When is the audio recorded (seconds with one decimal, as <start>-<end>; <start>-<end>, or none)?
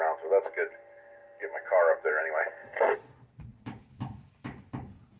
0.0-2.6; 3.6-5.2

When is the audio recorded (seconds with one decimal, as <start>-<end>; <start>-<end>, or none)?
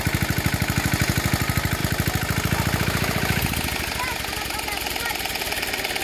0.0-6.0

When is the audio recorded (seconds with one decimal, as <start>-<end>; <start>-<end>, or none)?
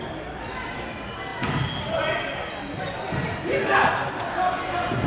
0.0-5.1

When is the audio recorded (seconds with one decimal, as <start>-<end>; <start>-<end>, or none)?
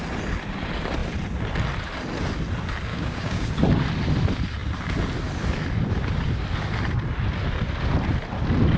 0.0-2.9; 3.5-8.8